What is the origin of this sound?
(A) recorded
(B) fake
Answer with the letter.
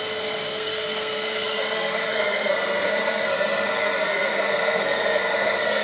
B